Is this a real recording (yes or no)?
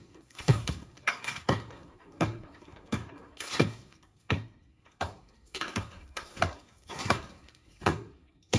no